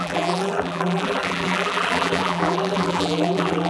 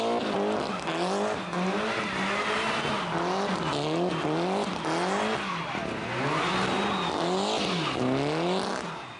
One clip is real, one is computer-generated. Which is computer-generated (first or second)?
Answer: first